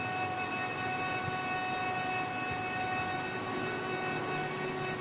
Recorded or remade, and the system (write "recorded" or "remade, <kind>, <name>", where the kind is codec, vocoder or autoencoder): recorded